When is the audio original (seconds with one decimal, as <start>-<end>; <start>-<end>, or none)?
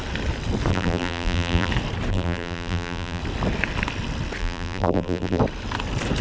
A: 0.0-0.7; 1.7-2.1; 3.2-4.4; 5.4-6.2